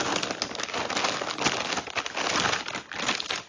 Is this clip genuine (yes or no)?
yes